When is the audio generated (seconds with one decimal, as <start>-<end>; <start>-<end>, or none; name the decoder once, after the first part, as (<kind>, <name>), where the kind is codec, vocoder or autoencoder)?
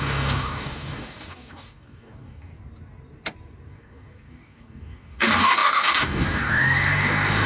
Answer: 0.0-2.5 (codec, DAC); 3.7-7.5